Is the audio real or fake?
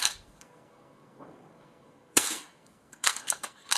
fake